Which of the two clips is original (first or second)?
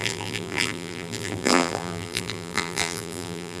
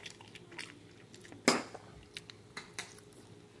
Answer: second